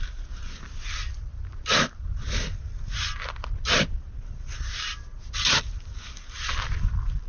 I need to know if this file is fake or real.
real